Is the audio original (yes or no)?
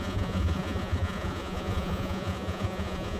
no